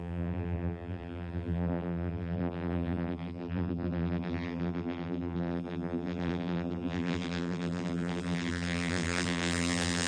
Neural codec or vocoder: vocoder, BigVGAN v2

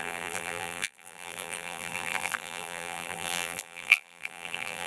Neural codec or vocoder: vocoder, BigVGAN v2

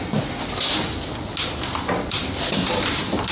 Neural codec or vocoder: none